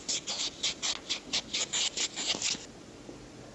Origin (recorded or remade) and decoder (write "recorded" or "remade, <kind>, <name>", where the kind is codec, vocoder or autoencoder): recorded